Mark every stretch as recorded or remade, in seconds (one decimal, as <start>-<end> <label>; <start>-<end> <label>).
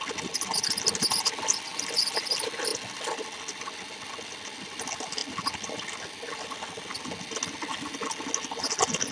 0.0-9.1 recorded